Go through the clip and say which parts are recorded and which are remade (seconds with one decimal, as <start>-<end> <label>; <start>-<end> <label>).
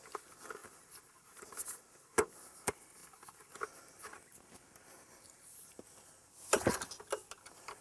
0.0-7.8 recorded